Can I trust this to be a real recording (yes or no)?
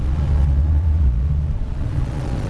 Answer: no